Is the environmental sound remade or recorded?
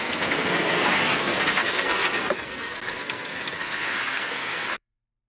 remade